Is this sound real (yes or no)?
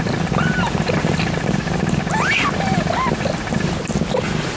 yes